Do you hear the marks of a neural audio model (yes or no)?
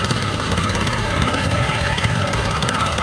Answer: yes